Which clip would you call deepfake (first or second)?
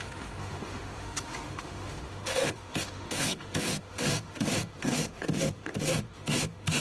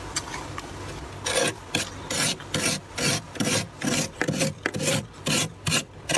first